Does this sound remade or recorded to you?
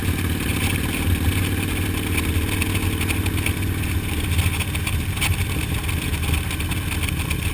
recorded